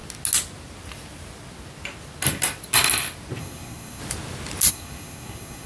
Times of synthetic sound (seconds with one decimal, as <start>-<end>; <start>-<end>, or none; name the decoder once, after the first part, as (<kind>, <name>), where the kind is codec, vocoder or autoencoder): 3.4-4.0 (codec, SNAC); 4.7-5.7